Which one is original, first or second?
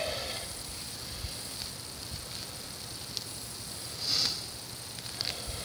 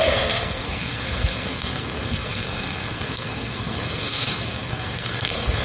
first